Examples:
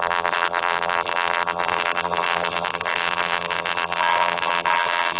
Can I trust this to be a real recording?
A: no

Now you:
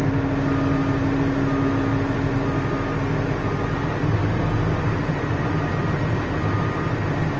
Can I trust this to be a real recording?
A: yes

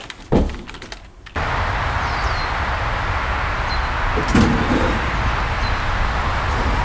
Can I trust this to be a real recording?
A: yes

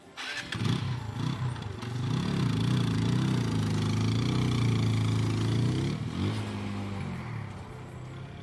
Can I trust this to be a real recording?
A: yes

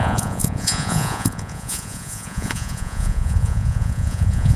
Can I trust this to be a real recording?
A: no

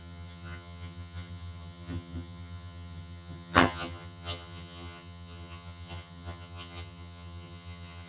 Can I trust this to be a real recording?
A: no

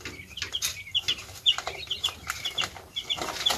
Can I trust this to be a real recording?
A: yes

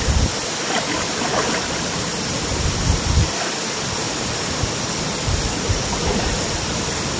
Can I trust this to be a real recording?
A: no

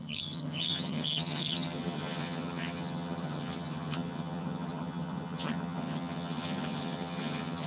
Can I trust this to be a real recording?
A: no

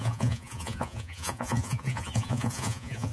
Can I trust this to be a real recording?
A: no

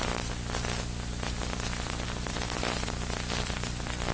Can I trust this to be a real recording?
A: no